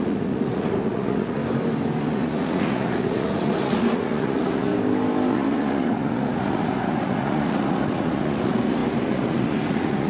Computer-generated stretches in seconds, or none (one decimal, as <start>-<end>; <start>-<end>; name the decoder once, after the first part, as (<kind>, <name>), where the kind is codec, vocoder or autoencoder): 0.0-1.4 (vocoder, Vocos); 2.0-4.7; 5.3-10.1